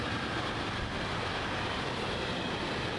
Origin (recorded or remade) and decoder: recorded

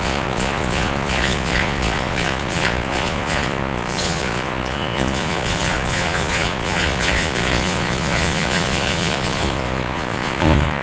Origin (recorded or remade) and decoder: remade, vocoder, Vocos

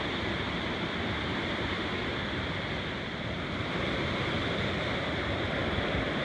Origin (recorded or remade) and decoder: recorded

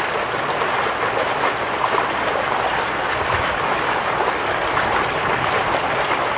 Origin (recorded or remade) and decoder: recorded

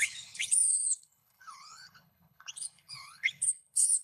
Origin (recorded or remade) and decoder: remade, codec, HILCodec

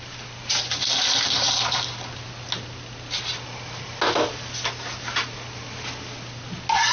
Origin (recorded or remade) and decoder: recorded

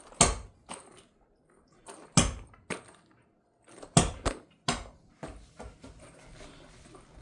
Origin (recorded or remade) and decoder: recorded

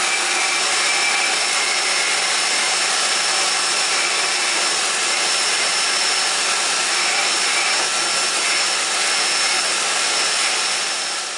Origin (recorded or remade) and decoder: recorded